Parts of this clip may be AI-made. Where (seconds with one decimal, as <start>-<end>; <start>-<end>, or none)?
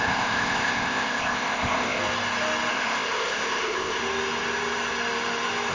0.0-2.0; 2.7-4.0